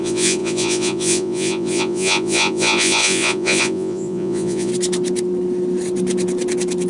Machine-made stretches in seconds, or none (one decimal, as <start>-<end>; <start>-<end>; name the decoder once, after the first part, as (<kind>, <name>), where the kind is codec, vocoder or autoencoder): 0.0-4.7 (vocoder, Vocos)